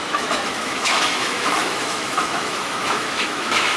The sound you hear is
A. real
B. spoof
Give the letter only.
B